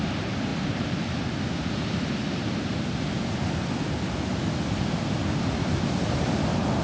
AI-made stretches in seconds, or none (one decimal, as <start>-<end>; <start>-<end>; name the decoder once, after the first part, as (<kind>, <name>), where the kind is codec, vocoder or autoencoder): none